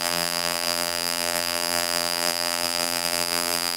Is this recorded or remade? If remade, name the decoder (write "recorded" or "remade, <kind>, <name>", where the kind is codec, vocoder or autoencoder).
remade, vocoder, BigVGAN v2